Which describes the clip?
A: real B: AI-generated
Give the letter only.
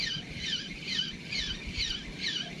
A